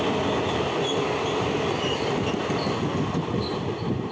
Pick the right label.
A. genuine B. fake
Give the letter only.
A